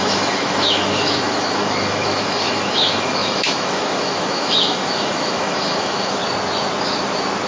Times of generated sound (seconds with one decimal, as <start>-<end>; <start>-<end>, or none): 0.0-6.2